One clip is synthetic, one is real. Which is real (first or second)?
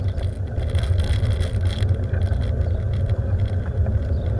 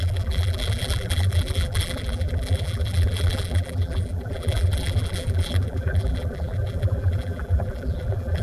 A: first